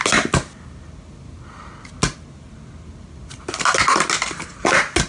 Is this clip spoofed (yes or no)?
no